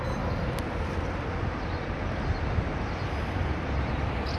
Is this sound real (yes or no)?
yes